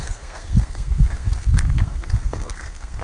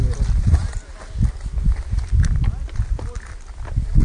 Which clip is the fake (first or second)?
first